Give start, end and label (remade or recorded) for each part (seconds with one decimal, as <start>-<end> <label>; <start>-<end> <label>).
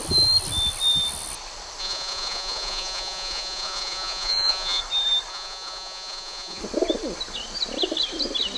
0.0-1.8 recorded; 1.8-4.8 remade; 4.8-5.3 recorded; 5.3-6.6 remade; 6.6-8.6 recorded